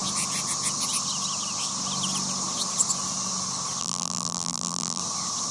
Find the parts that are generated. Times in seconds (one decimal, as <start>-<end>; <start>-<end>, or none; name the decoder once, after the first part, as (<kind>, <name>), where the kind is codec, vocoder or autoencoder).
3.8-5.0 (vocoder, BigVGAN v2)